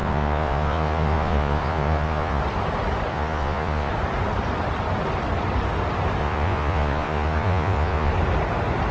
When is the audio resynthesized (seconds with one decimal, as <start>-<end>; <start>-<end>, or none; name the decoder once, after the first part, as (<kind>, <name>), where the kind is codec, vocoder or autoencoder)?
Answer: 0.0-2.4 (vocoder, Vocos); 3.1-3.9; 6.2-8.1

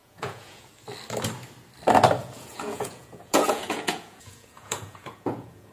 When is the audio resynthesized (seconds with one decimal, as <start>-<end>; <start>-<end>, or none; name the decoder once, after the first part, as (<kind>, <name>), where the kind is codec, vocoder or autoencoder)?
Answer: 0.0-0.7 (vocoder, Vocos); 2.2-5.7

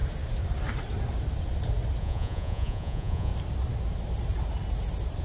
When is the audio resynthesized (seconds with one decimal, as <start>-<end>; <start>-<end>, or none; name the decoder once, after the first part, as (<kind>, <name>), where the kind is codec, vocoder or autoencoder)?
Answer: 2.0-3.3 (vocoder, Vocos)

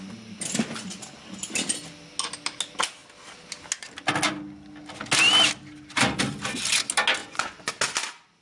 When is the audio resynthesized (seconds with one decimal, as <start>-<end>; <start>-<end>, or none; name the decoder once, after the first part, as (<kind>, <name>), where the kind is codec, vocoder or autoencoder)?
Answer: 7.2-7.7 (vocoder, Vocos)

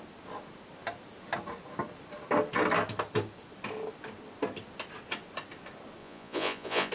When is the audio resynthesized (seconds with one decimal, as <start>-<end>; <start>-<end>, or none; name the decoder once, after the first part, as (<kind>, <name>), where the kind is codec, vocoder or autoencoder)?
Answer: 6.0-6.9 (vocoder, Vocos)

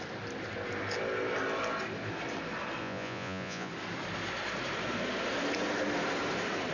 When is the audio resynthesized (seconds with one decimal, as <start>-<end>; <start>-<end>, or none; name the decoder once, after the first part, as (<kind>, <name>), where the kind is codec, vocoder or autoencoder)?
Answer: 2.8-3.7 (vocoder, Vocos)

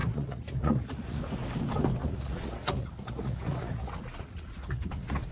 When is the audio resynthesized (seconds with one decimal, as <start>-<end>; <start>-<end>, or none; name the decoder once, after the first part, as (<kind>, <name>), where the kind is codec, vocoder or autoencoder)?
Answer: 0.0-1.2 (vocoder, Vocos); 2.0-5.3